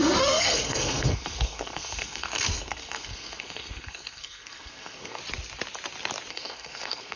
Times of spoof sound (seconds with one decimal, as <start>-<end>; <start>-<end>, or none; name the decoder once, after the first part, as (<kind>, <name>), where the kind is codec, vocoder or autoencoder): 0.0-5.2 (codec, SNAC); 6.3-7.2